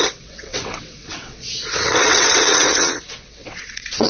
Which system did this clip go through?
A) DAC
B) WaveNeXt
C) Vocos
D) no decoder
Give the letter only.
B